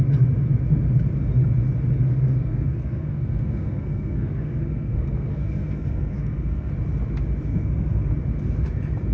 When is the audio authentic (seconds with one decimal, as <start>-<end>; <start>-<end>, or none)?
0.0-2.1; 6.7-7.5; 8.1-9.1